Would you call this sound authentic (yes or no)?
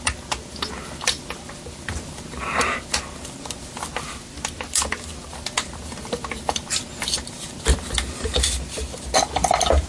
yes